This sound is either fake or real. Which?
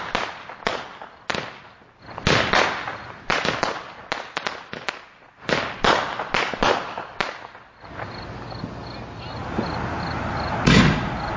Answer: real